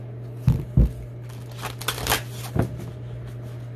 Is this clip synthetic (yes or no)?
no